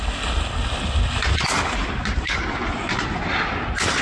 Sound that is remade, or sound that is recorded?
recorded